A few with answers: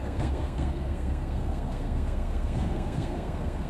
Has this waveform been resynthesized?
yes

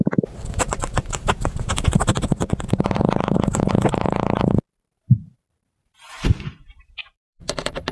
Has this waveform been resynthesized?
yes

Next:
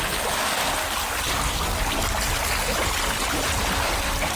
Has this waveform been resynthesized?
no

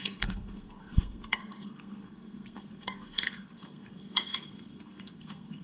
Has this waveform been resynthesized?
yes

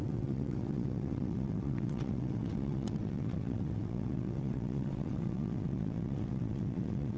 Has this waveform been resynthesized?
yes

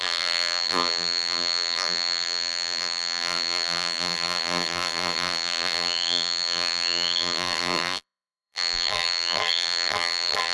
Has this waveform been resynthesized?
yes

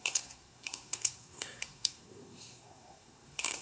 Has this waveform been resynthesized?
yes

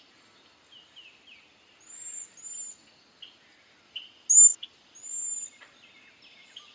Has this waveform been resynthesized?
no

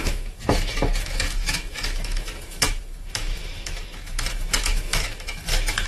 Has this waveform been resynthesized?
yes